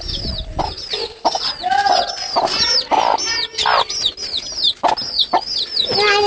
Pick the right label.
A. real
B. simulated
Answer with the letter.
A